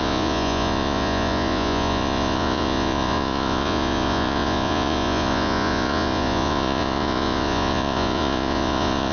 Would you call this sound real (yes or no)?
no